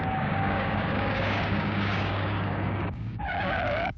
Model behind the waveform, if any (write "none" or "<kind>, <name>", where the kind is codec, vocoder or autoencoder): codec, DAC